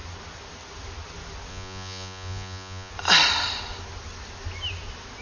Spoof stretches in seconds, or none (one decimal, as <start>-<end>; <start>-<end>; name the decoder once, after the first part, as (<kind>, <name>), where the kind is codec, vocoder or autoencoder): 1.5-2.9 (vocoder, Vocos)

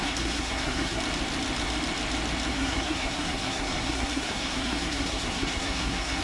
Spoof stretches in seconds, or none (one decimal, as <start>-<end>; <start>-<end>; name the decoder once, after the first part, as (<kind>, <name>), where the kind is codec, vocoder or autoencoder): 0.0-1.0 (codec, SNAC); 2.5-6.2

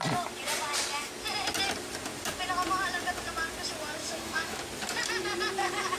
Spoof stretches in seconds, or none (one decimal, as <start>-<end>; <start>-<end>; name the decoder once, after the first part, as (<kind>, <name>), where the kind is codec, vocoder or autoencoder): 4.0-4.6 (autoencoder, DAC-VAE)